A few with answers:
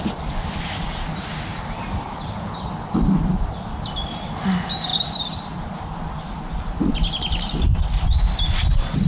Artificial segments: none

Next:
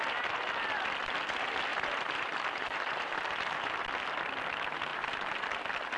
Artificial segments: 1.7-3.3 (vocoder, BigVGAN v2); 4.9-5.4

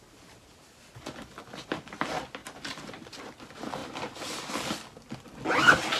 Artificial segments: 2.4-3.4 (vocoder, BigVGAN v2)

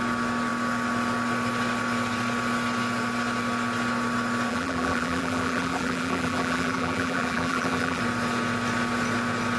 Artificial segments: 4.5-8.0 (vocoder, BigVGAN v2)